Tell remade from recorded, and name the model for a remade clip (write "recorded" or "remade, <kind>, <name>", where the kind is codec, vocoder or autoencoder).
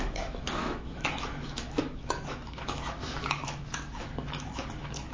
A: remade, autoencoder, DAC-VAE